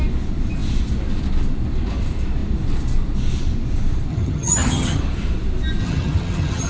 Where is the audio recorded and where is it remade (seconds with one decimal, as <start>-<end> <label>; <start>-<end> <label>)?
0.0-4.1 recorded; 4.1-5.0 remade; 5.0-5.8 recorded; 5.8-6.7 remade